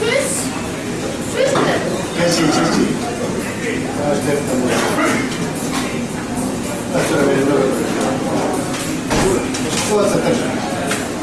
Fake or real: real